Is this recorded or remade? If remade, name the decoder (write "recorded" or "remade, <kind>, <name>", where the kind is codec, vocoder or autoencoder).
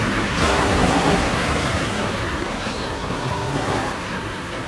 remade, codec, SNAC